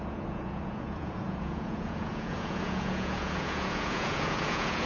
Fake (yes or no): yes